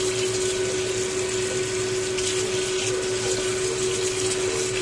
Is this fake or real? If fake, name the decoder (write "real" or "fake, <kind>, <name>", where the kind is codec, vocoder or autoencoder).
real